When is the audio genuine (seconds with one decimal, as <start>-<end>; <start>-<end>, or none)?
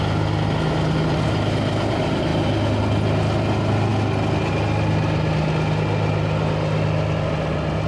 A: 0.0-7.9